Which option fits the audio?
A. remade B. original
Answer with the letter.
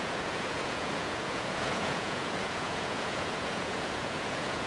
A